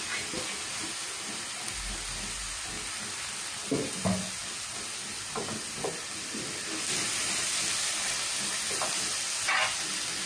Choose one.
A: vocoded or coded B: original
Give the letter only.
B